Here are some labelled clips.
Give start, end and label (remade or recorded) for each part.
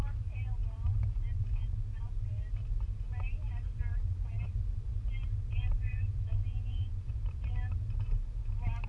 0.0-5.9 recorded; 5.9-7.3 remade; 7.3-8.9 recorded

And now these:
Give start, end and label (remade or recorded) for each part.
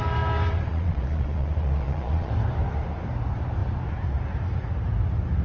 0.0-0.7 recorded; 0.7-2.3 remade; 2.3-5.4 recorded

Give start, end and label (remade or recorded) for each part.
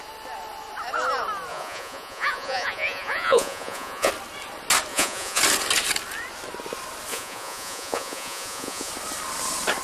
0.0-1.5 recorded; 1.5-4.1 remade; 4.1-4.9 recorded; 4.9-5.4 remade; 5.4-7.1 recorded; 7.1-8.9 remade; 8.9-9.8 recorded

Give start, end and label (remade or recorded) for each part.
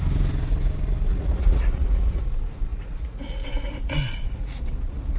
0.0-1.1 recorded; 1.1-2.2 remade; 2.2-2.7 recorded; 2.7-4.6 remade; 4.6-5.2 recorded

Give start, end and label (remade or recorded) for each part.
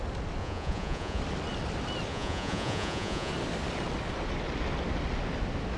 0.0-0.4 recorded; 0.4-1.2 remade; 1.2-2.1 recorded; 2.1-3.3 remade; 3.3-5.8 recorded